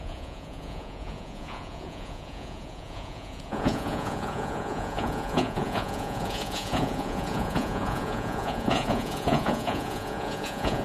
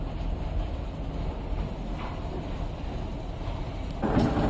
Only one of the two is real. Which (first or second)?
second